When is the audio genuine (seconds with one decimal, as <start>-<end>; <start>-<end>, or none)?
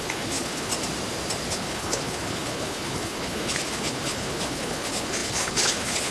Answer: 0.7-1.5